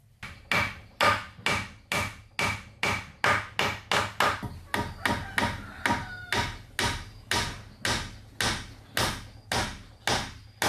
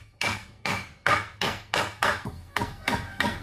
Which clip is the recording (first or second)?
first